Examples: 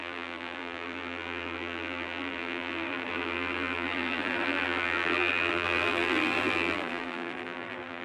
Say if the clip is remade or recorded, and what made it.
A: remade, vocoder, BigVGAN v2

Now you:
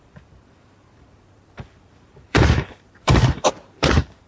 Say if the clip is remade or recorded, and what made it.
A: remade, vocoder, BigVGAN v2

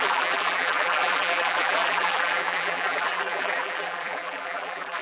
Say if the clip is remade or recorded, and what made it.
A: remade, vocoder, BigVGAN v2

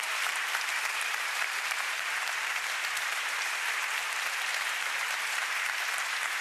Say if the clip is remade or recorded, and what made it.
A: remade, vocoder, BigVGAN v2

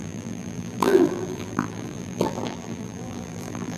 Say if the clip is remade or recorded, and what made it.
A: remade, vocoder, BigVGAN v2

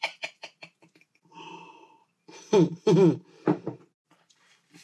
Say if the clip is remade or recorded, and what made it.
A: remade, vocoder, BigVGAN v2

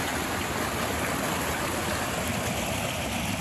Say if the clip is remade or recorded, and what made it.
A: recorded